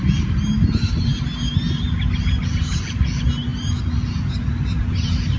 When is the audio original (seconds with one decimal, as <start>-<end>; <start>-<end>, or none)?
0.0-5.4